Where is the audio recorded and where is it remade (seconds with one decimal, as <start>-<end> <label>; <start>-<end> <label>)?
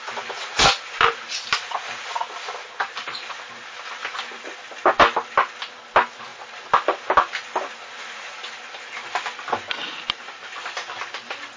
0.0-11.6 recorded